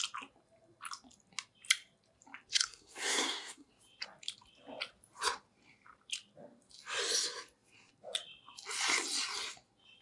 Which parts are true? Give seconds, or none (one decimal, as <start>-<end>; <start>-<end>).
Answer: 0.0-2.5; 3.7-10.0